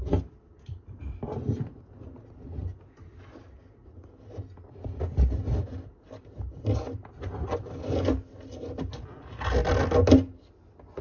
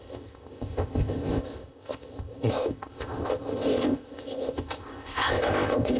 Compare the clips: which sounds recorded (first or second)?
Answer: first